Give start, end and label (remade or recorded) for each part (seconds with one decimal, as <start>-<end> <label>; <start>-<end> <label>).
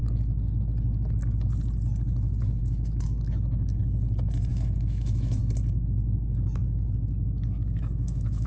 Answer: 0.0-2.6 recorded; 2.6-3.8 remade; 3.8-4.5 recorded; 4.5-5.4 remade; 5.4-6.6 recorded; 6.6-8.5 remade